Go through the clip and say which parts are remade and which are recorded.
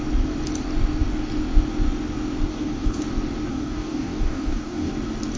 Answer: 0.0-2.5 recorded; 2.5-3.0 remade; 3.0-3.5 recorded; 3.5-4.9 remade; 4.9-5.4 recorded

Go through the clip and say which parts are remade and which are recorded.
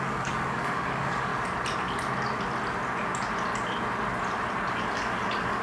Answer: 0.0-1.3 remade; 1.3-4.7 recorded; 4.7-5.6 remade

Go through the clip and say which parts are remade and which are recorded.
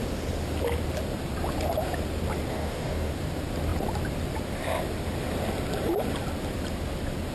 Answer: 0.0-2.5 recorded; 2.5-3.1 remade; 3.1-7.3 recorded